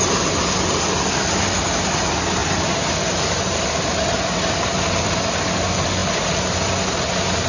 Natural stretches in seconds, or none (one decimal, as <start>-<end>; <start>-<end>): 0.0-7.5